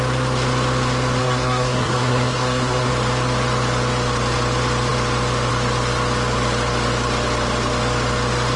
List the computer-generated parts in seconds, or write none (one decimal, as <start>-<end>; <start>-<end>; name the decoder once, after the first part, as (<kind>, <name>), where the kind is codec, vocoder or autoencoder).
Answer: 1.2-2.9 (codec, SNAC)